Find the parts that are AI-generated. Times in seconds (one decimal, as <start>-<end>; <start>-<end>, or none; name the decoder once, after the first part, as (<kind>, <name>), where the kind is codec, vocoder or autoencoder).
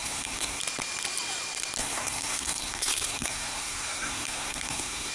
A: 0.0-0.6 (codec, SNAC); 1.8-5.1